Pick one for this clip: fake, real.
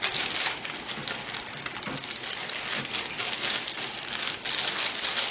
real